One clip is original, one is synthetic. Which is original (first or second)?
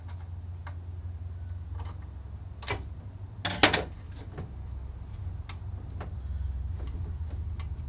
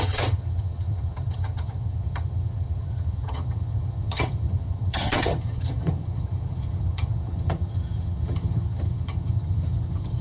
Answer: first